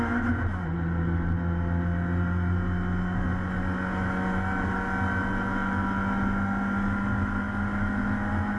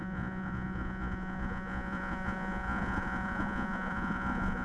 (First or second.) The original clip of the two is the first